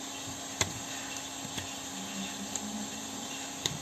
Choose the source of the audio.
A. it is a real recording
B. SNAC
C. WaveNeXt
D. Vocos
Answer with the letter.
A